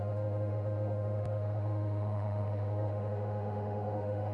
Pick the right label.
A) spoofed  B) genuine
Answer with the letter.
A